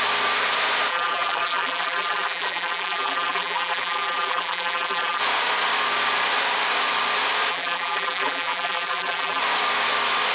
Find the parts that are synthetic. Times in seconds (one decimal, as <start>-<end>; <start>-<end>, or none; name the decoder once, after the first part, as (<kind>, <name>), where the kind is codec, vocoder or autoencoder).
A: 0.9-5.2 (vocoder, BigVGAN v2); 7.5-9.4